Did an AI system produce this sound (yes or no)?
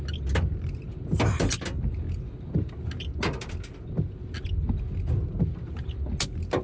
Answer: no